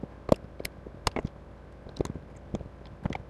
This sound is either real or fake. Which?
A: real